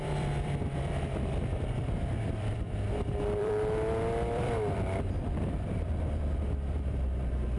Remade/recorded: remade